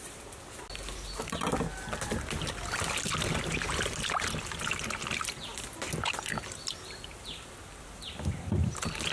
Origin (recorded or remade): recorded